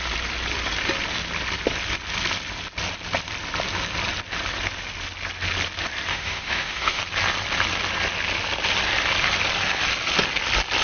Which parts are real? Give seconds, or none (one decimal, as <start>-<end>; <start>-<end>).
0.0-6.1; 7.0-10.8